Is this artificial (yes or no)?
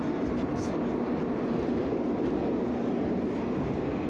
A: no